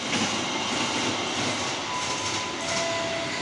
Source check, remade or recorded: recorded